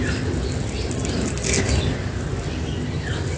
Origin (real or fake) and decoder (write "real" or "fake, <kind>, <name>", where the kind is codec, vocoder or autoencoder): real